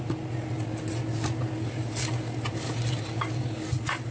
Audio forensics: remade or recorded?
recorded